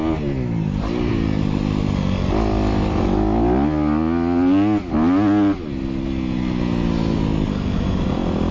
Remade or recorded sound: recorded